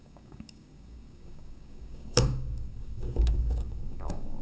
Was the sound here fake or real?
fake